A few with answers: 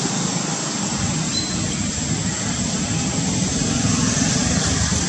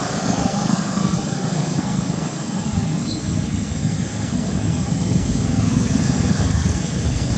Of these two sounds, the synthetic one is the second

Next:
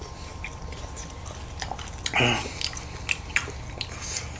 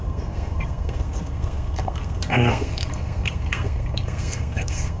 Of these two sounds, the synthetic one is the second